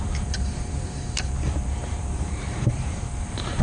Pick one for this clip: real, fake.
fake